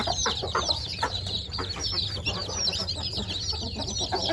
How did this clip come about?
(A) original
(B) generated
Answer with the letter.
B